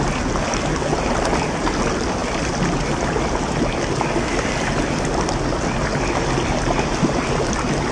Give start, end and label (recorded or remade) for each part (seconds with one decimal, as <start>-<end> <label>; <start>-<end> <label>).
0.0-7.9 recorded